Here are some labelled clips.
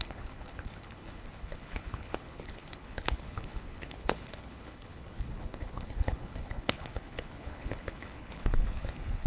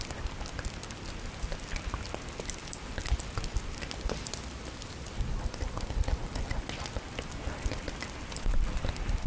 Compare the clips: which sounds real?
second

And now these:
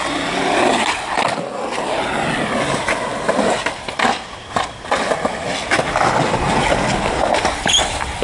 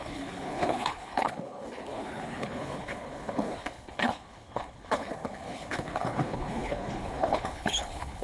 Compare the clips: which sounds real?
first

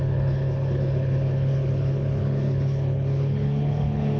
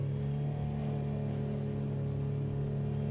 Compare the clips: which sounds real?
second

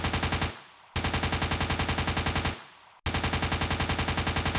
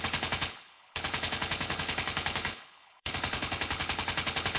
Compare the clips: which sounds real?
first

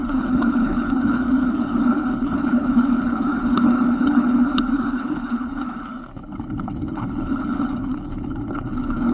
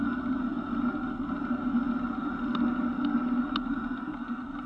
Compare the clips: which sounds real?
second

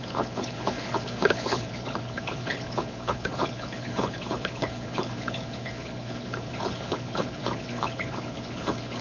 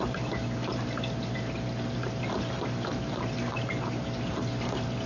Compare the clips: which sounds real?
second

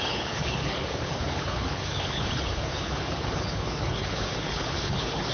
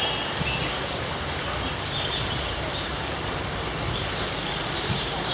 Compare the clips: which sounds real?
second